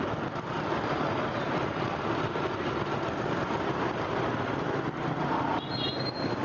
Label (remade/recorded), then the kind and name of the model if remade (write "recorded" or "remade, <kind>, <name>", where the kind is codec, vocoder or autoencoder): remade, vocoder, BigVGAN v2